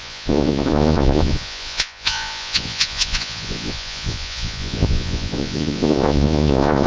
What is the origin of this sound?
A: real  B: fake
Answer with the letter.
B